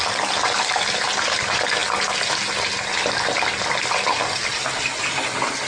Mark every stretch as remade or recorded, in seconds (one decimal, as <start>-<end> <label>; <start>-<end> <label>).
0.0-5.7 recorded